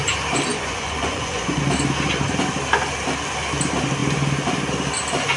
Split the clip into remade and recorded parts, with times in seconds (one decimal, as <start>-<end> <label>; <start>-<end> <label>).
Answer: 0.0-0.5 recorded; 0.5-1.6 remade; 1.6-5.4 recorded